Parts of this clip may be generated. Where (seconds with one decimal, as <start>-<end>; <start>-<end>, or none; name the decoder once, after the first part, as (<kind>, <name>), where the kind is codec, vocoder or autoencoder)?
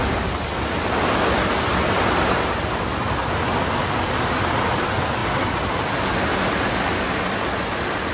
none